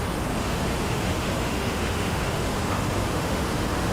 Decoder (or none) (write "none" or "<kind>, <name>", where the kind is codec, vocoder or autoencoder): autoencoder, DAC-VAE